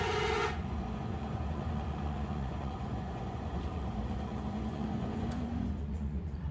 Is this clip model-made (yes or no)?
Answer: yes